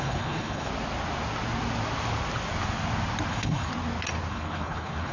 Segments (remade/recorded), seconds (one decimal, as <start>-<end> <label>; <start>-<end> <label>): 0.0-0.7 remade; 0.7-3.3 recorded; 3.3-3.7 remade; 3.7-4.3 recorded; 4.3-5.1 remade